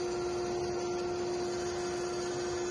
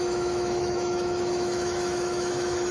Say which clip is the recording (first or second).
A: first